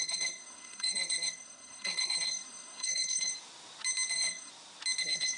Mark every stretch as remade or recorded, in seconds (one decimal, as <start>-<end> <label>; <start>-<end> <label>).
0.0-3.3 remade; 3.3-4.1 recorded; 4.1-4.5 remade; 4.5-5.0 recorded; 5.0-5.4 remade